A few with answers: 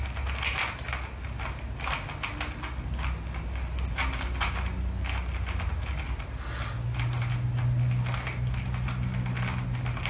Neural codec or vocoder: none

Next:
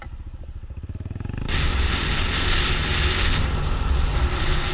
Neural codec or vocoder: none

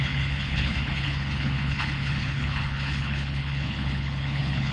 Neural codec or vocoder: codec, HILCodec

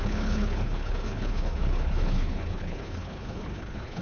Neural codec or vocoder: codec, HILCodec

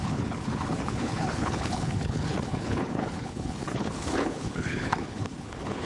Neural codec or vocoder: codec, HILCodec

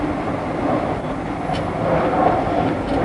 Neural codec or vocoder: none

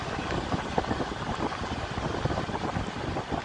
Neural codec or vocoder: none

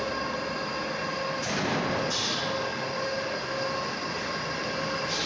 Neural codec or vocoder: none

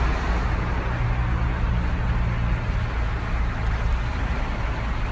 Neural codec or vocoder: none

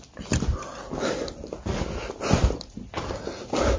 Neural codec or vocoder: none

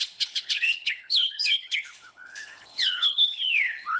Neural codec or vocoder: codec, HILCodec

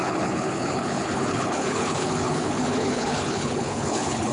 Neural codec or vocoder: codec, HILCodec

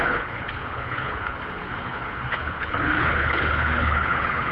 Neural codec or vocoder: codec, HILCodec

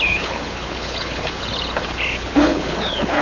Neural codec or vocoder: codec, HILCodec